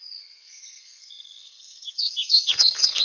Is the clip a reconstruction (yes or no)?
yes